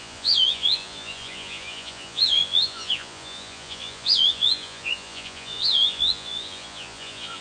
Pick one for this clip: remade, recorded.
remade